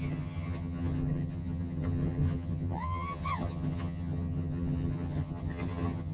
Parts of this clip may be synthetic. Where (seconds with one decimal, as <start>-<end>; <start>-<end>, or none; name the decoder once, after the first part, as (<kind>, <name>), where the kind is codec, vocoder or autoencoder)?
0.0-6.1 (vocoder, HiFi-GAN)

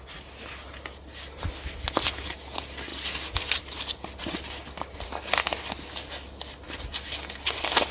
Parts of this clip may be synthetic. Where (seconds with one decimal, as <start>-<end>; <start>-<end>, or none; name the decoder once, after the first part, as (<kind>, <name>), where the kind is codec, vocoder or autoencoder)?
none

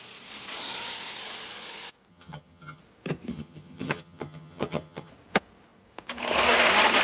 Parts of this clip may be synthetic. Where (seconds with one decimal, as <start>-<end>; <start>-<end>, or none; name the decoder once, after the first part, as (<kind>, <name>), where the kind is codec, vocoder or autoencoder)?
2.1-2.8 (vocoder, HiFi-GAN); 3.3-5.1

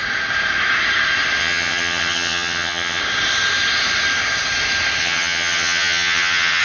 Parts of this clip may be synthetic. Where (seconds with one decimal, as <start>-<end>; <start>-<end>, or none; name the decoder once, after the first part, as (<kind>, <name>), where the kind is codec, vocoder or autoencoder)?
1.4-3.0 (vocoder, HiFi-GAN); 5.0-6.6

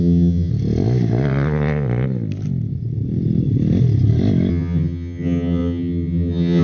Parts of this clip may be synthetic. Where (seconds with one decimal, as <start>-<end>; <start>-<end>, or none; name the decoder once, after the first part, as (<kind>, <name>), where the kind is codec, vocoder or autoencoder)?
0.0-0.5 (vocoder, HiFi-GAN); 4.5-6.6

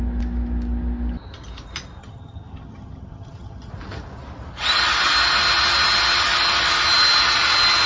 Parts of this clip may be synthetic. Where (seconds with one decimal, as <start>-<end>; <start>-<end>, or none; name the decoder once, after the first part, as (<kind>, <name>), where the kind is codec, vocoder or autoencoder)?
2.0-3.7 (vocoder, HiFi-GAN)